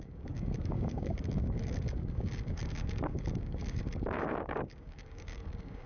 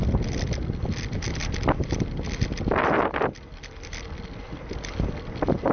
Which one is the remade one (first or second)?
first